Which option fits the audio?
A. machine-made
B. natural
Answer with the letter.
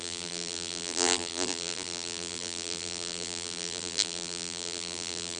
A